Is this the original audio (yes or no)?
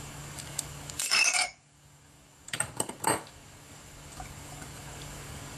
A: no